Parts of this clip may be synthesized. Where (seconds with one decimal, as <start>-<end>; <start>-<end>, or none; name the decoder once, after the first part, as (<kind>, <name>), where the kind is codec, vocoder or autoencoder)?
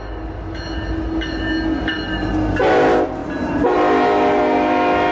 none